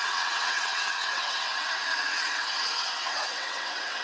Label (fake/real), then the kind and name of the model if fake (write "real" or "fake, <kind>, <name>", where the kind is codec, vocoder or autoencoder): fake, vocoder, WaveNeXt